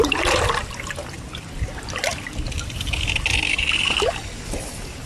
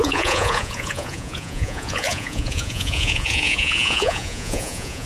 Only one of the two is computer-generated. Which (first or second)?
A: second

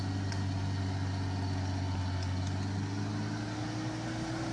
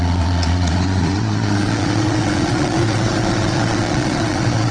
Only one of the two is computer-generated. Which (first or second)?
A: second